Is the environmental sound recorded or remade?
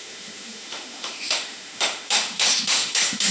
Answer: remade